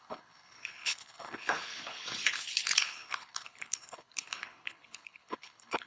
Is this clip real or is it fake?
fake